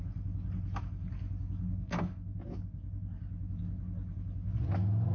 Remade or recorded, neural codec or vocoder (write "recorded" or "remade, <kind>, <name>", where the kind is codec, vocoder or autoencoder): recorded